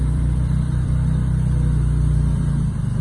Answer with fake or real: fake